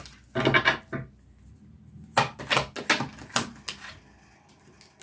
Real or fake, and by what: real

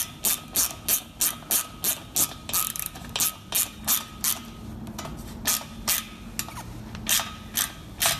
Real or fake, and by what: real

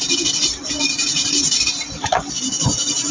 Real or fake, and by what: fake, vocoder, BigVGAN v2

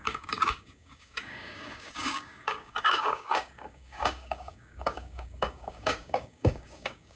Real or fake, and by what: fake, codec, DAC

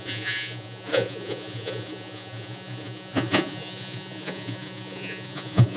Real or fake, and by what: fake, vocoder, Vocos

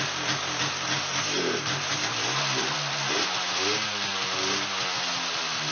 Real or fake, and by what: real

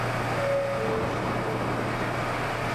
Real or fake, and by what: real